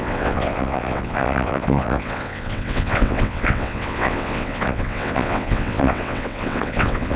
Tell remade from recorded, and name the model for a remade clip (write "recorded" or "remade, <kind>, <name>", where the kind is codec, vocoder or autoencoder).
remade, vocoder, WaveNeXt